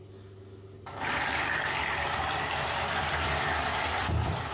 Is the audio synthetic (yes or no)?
yes